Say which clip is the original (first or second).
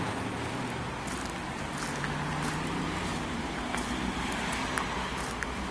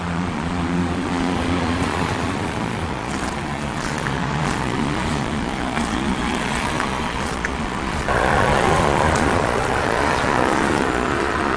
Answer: first